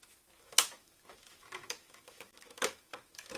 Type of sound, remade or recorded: remade